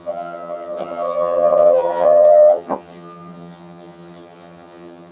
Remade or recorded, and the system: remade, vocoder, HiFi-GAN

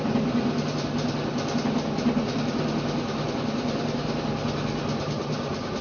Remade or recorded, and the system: recorded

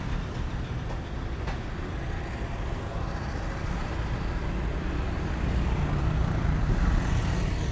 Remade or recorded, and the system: recorded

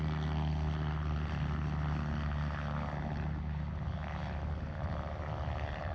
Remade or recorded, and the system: recorded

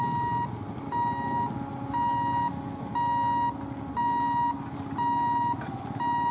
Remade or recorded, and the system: recorded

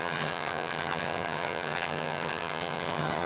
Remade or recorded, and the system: remade, vocoder, HiFi-GAN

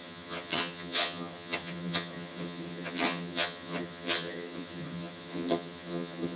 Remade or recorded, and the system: remade, vocoder, HiFi-GAN